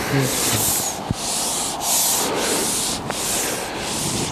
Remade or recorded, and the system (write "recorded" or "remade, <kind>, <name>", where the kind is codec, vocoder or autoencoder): recorded